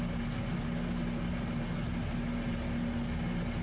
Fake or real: real